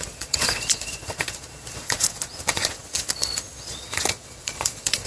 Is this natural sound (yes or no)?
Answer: no